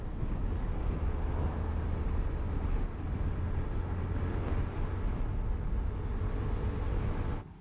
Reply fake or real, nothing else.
real